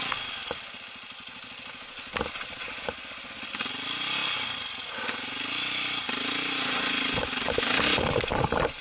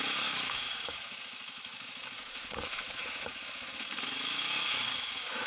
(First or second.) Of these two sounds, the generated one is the second